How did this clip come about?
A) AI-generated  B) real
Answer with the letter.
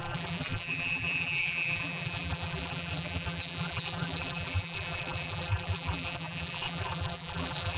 A